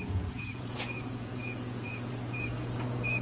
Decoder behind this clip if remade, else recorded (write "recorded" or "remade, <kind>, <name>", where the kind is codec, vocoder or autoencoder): remade, vocoder, Vocos